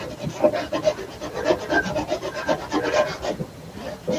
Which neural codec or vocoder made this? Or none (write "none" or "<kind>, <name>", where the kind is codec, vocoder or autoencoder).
none